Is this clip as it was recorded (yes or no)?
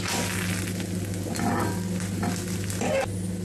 yes